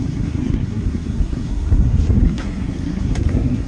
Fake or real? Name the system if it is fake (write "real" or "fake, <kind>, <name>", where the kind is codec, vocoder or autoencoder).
fake, codec, SNAC